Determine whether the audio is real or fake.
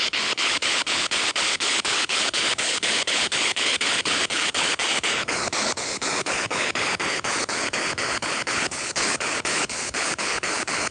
fake